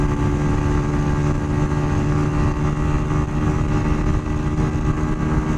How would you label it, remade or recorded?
recorded